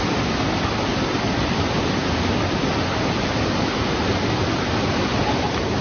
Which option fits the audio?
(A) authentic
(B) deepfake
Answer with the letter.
A